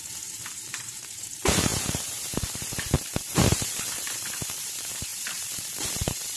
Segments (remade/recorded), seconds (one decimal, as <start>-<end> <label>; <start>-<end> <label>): 0.0-6.4 remade